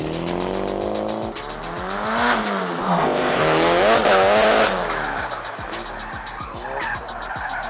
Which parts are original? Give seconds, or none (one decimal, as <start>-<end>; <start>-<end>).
0.0-2.8; 3.4-7.7